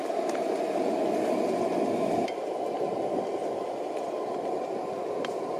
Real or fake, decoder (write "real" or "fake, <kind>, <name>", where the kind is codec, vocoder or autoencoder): real